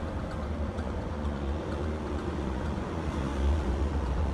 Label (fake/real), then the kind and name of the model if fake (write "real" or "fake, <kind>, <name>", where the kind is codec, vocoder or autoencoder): fake, vocoder, Vocos